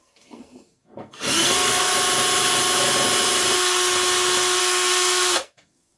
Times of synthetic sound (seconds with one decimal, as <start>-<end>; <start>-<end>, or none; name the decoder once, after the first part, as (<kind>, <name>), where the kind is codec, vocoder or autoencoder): 0.0-1.9 (codec, SNAC); 4.6-6.0